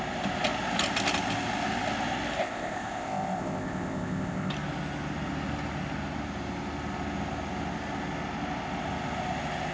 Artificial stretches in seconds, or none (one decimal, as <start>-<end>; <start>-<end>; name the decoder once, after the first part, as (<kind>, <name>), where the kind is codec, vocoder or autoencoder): 2.4-4.5 (codec, ZipCodec)